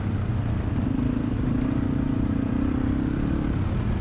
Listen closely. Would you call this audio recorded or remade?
remade